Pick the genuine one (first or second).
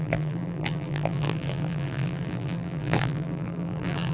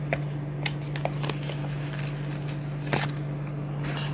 second